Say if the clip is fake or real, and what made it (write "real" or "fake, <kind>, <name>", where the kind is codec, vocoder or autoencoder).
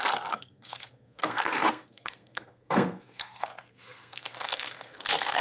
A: fake, codec, SNAC